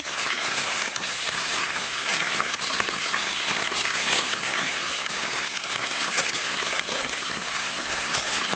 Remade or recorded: remade